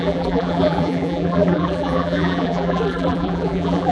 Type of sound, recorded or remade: remade